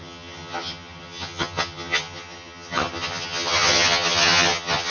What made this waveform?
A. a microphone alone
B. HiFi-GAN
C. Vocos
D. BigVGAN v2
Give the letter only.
B